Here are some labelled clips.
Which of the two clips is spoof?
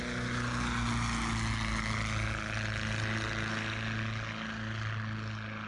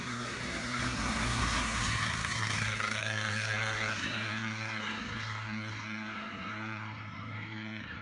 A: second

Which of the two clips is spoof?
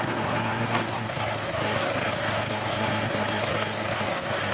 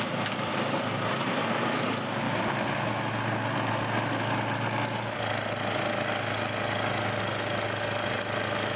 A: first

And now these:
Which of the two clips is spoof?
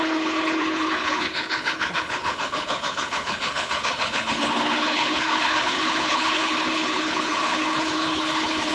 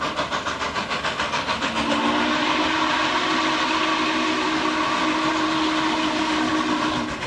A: first